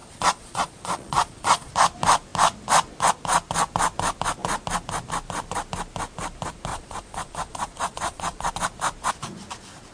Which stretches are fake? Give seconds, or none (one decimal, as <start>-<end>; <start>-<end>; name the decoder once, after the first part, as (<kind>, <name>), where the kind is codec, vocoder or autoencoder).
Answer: 0.0-1.7 (vocoder, Vocos); 6.7-8.5